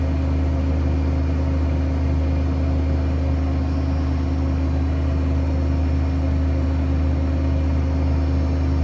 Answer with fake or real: real